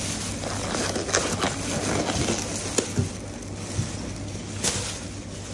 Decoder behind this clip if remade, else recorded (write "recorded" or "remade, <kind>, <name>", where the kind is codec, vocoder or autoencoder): recorded